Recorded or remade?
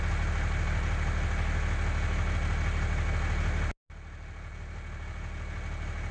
recorded